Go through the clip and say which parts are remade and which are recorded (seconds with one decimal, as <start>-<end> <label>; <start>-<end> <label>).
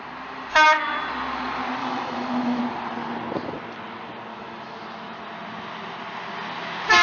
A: 0.0-1.8 recorded; 1.8-2.6 remade; 2.6-4.3 recorded; 4.3-5.2 remade; 5.2-7.0 recorded